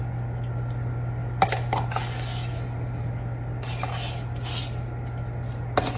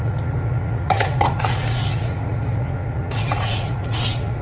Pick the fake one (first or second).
second